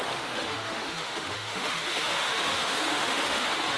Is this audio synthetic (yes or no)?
yes